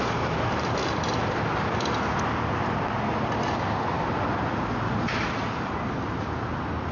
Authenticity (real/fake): real